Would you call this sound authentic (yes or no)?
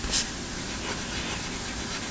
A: yes